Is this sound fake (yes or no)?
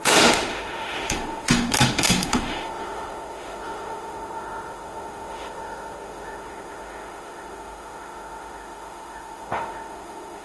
yes